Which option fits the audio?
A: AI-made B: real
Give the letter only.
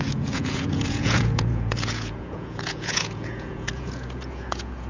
A